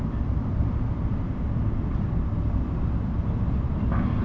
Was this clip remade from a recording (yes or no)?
no